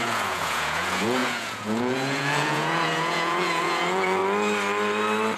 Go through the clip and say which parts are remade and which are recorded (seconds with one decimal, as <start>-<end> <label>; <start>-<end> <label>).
0.0-4.2 remade; 4.2-5.4 recorded